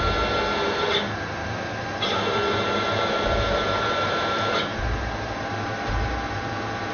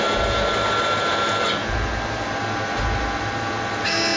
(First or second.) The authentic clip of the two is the second